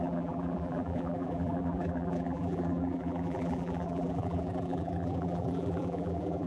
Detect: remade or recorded remade